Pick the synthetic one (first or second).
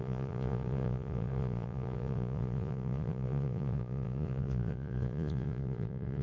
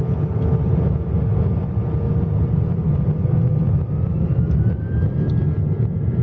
first